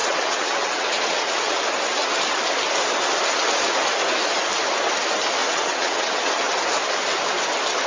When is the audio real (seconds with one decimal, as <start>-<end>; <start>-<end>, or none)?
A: 1.6-5.4; 6.3-7.9